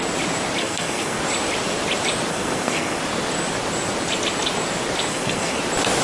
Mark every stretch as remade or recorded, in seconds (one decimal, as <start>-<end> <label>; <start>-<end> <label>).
0.0-0.6 recorded; 0.6-1.2 remade; 1.2-2.3 recorded; 2.3-3.0 remade; 3.0-5.1 recorded; 5.1-5.6 remade; 5.6-6.0 recorded

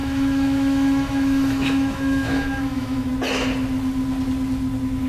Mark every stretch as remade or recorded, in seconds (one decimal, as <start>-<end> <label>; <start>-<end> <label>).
0.0-3.1 remade; 3.1-5.1 recorded

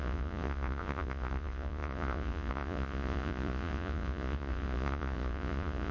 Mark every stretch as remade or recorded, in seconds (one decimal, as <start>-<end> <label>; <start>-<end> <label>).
0.0-5.9 remade

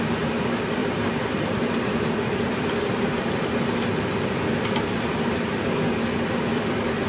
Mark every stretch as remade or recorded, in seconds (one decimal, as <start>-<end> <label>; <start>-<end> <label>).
0.0-0.8 recorded; 0.8-1.8 remade; 1.8-7.1 recorded

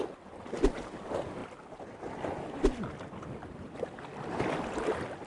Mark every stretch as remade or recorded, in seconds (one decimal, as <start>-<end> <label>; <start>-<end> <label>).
0.0-5.3 recorded

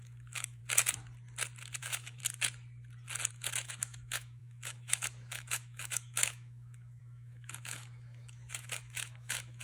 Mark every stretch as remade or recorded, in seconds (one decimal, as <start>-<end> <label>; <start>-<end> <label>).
0.0-0.6 remade; 0.6-1.8 recorded; 1.8-2.2 remade; 2.2-3.3 recorded; 3.3-9.6 remade